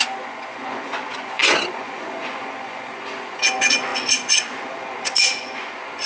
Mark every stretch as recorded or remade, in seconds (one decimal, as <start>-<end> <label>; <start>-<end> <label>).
0.0-6.1 remade